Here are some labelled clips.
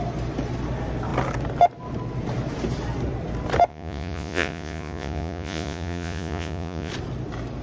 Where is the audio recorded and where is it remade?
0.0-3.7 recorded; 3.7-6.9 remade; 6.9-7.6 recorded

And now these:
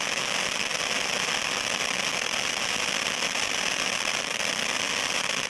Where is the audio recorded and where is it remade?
0.0-5.5 recorded

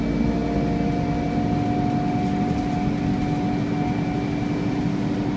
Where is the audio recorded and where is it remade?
0.0-5.4 recorded

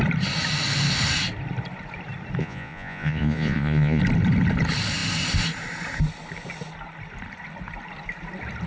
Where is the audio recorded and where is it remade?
0.0-2.4 recorded; 2.4-4.0 remade; 4.0-8.7 recorded

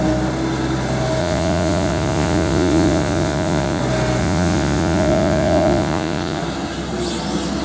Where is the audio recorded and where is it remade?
0.0-1.2 recorded; 1.2-3.8 remade; 3.8-4.2 recorded; 4.2-6.4 remade; 6.4-7.6 recorded

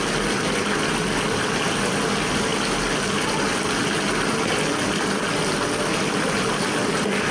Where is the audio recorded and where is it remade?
0.0-7.3 recorded

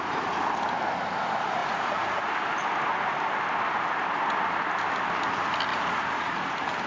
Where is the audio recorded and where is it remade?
0.0-1.6 recorded; 1.6-2.3 remade; 2.3-5.7 recorded; 5.7-6.5 remade; 6.5-6.9 recorded

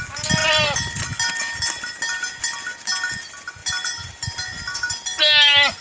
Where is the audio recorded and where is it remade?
0.0-5.8 recorded